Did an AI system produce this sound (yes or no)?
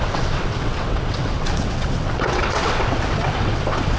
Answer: yes